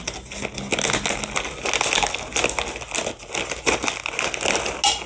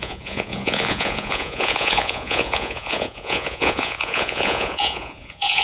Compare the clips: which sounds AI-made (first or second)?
second